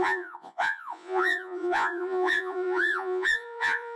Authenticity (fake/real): fake